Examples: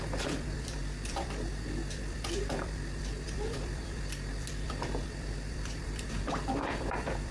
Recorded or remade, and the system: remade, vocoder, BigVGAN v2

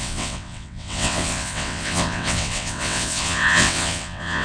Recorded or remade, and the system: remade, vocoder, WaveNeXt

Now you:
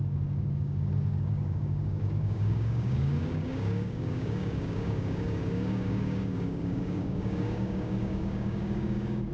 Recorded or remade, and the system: remade, codec, DAC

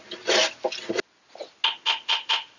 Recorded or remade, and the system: recorded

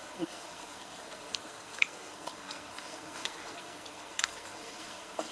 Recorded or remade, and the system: remade, codec, SNAC